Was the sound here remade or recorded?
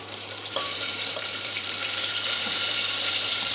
remade